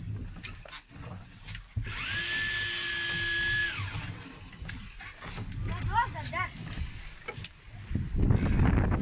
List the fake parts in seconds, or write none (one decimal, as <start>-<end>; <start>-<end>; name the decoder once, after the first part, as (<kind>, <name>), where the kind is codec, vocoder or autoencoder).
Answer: none

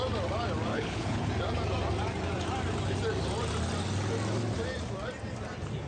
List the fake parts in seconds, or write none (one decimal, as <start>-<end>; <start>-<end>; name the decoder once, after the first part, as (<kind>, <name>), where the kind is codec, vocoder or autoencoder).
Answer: 0.7-1.3 (codec, HILCodec)

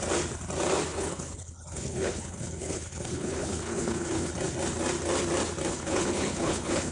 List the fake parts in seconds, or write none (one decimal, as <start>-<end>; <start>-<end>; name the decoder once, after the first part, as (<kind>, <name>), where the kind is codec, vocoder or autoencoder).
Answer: 0.9-4.3 (codec, HILCodec); 5.7-6.9